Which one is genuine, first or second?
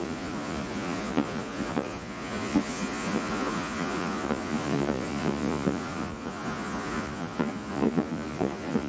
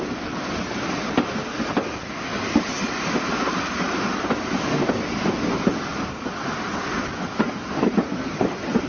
second